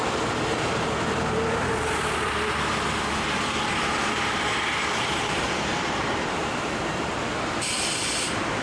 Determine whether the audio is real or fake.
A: fake